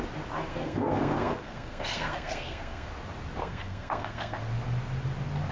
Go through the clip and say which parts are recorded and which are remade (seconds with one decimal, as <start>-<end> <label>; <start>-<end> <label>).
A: 0.0-0.5 recorded; 0.5-2.9 remade; 2.9-3.4 recorded; 3.4-4.4 remade; 4.4-5.5 recorded